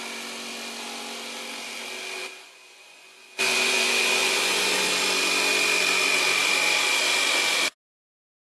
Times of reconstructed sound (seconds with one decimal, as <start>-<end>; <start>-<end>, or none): 2.2-4.9